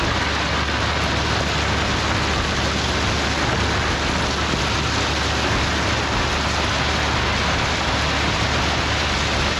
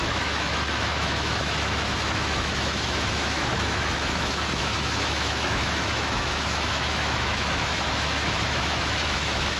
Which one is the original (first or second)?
first